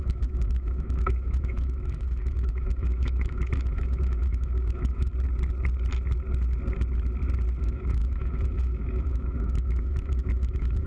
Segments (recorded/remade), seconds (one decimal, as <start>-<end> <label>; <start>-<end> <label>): 0.0-5.1 remade; 5.1-7.6 recorded; 7.6-10.9 remade

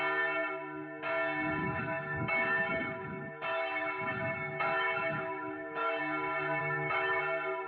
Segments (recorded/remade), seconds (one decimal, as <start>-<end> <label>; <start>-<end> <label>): 0.0-1.6 recorded; 1.6-6.0 remade; 6.0-6.6 recorded; 6.6-7.2 remade; 7.2-7.7 recorded

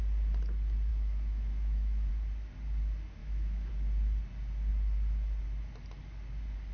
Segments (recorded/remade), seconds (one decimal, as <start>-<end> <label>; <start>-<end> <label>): 0.0-0.9 recorded; 0.9-2.1 remade; 2.1-3.2 recorded; 3.2-3.7 remade; 3.7-6.7 recorded

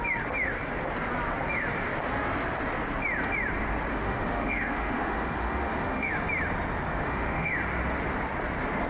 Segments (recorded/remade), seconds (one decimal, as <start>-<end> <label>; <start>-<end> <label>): 0.0-3.9 recorded; 3.9-6.1 remade; 6.1-6.9 recorded; 6.9-7.5 remade; 7.5-8.9 recorded

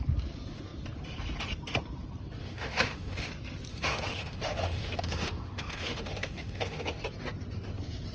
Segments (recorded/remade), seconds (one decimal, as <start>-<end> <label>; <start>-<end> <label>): 0.0-2.4 recorded; 2.4-3.3 remade; 3.3-3.7 recorded; 3.7-7.0 remade; 7.0-8.1 recorded

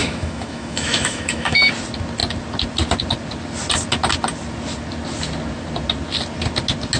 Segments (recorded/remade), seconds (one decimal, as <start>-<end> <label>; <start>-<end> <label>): 0.0-1.7 remade; 1.7-7.0 recorded

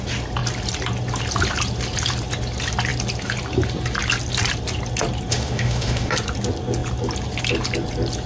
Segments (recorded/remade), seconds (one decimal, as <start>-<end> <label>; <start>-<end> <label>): 0.0-5.3 recorded; 5.3-6.1 remade; 6.1-8.3 recorded

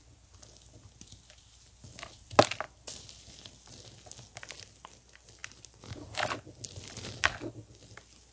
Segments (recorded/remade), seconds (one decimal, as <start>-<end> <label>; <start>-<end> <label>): 0.0-8.3 recorded